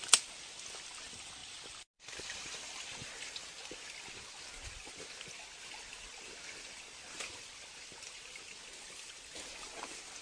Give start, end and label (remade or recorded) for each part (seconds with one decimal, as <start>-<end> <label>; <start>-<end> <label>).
0.0-10.2 recorded